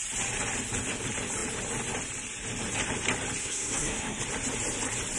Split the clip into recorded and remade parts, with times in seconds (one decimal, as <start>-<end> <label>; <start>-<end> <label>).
0.0-3.4 recorded; 3.4-4.2 remade; 4.2-5.2 recorded